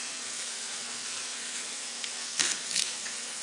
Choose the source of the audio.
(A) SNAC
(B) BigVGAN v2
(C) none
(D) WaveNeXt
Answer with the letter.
A